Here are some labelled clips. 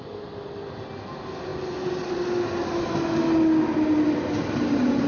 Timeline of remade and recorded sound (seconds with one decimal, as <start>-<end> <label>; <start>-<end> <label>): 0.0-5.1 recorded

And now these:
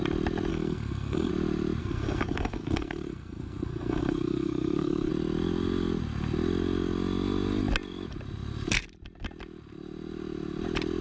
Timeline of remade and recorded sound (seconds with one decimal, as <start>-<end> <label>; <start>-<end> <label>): 0.0-0.5 recorded; 0.5-1.3 remade; 1.3-1.8 recorded; 1.8-5.1 remade; 5.1-11.0 recorded

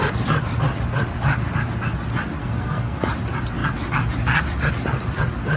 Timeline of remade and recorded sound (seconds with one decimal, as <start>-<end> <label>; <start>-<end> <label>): 0.0-2.4 recorded; 2.4-3.0 remade; 3.0-5.6 recorded